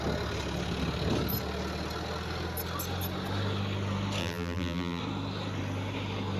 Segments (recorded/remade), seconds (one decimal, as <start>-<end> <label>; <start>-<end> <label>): 0.0-4.2 recorded; 4.2-5.0 remade; 5.0-6.4 recorded